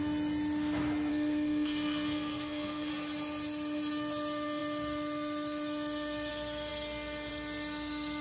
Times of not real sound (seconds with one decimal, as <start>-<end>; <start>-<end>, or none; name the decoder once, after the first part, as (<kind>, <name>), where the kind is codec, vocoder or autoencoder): 1.1-2.9 (codec, SNAC)

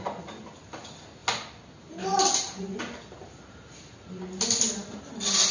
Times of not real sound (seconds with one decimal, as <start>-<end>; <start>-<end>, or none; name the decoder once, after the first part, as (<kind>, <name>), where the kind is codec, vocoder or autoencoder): none

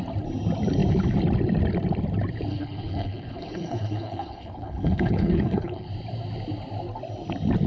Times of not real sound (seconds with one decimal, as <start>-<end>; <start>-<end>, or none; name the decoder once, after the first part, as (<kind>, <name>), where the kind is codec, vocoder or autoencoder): 2.5-5.9 (codec, HILCodec)

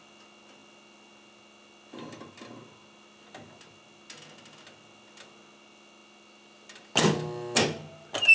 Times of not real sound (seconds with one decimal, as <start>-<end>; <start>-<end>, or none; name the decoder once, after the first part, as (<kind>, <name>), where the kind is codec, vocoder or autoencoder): none